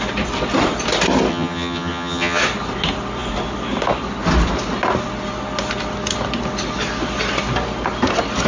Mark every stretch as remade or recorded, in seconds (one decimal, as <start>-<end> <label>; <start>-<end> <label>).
0.0-1.3 recorded; 1.3-2.4 remade; 2.4-8.5 recorded